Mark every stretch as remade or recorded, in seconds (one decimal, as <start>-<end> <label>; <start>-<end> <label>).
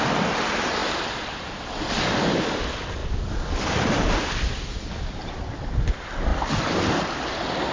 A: 0.0-3.0 recorded; 3.0-4.5 remade; 4.5-6.3 recorded; 6.3-6.9 remade; 6.9-7.7 recorded